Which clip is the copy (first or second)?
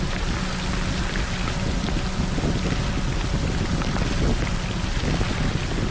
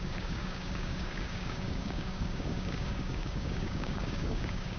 second